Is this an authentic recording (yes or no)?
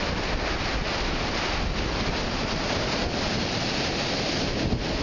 yes